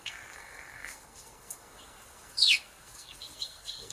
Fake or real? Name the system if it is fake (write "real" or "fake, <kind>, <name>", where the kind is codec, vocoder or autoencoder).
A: fake, codec, SNAC